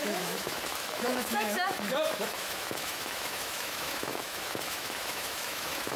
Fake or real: fake